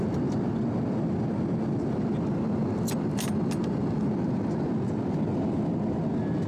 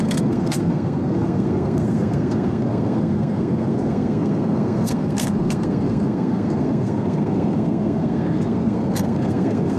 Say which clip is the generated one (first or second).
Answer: second